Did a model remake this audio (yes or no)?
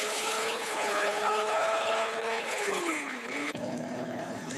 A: yes